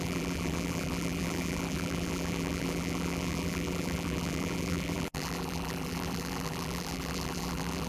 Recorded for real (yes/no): no